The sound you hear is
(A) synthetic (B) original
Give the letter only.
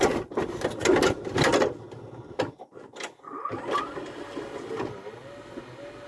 B